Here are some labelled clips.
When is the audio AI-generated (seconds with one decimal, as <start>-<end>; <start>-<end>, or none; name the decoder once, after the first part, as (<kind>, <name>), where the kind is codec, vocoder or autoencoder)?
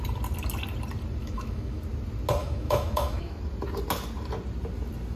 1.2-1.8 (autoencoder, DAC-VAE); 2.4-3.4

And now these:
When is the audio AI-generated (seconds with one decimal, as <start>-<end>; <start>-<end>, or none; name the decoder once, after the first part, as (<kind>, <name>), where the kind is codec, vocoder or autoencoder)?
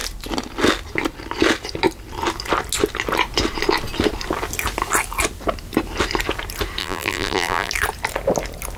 6.8-7.7 (vocoder, BigVGAN v2)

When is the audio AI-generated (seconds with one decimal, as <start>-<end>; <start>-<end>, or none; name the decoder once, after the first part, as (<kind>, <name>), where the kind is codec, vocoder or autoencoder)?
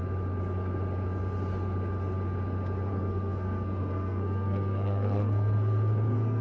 2.9-6.4 (codec, SNAC)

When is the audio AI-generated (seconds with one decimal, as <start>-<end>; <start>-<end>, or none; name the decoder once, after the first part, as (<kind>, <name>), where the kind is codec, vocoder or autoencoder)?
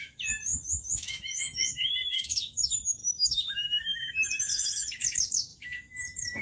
0.0-6.4 (autoencoder, DAC-VAE)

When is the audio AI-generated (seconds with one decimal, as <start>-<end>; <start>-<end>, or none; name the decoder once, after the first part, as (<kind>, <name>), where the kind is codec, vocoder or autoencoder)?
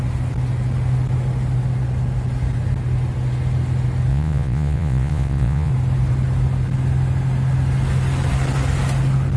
4.1-5.7 (vocoder, Vocos)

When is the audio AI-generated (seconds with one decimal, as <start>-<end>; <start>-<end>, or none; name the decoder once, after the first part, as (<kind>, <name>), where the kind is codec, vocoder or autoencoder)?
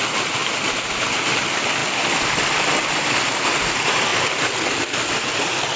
none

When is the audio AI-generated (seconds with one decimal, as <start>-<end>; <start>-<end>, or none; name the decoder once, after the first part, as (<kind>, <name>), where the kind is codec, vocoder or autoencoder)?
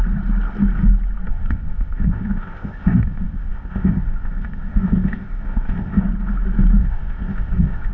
1.3-6.0 (codec, ZipCodec); 6.8-7.9